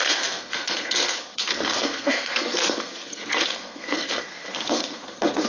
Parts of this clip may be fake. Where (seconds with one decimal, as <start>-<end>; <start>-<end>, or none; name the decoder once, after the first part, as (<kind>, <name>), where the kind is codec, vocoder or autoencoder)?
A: 0.0-5.5 (codec, SNAC)